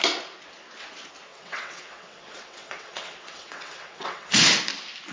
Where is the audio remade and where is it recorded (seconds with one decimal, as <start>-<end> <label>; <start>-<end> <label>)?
0.0-1.3 recorded; 1.3-4.4 remade; 4.4-5.1 recorded